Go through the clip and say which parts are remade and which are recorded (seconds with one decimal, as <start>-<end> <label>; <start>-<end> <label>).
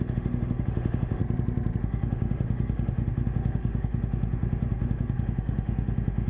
0.0-1.2 remade; 1.2-1.8 recorded; 1.8-6.3 remade